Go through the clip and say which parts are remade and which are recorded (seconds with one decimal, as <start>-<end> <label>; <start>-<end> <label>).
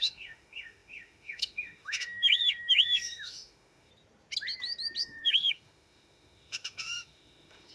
0.0-3.9 remade; 3.9-5.0 recorded; 5.0-7.7 remade